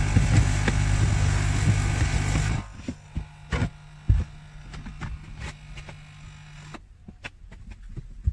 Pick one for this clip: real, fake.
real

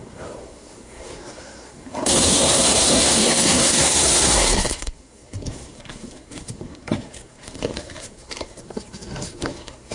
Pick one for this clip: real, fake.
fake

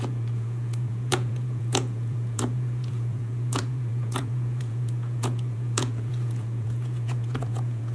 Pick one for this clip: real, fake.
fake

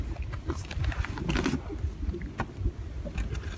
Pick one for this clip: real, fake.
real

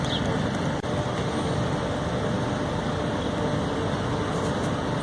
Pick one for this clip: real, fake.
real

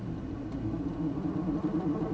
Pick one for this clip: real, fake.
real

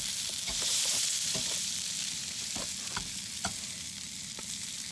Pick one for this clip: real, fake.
fake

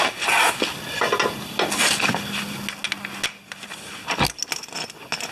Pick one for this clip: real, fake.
real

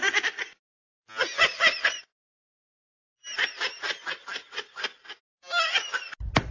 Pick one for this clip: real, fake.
real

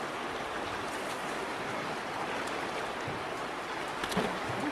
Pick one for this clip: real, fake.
real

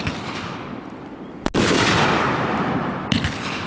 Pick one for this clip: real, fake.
real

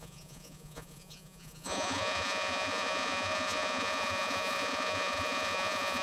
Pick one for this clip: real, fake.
fake